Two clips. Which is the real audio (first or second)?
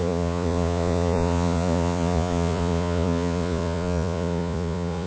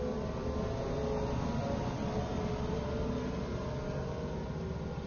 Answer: second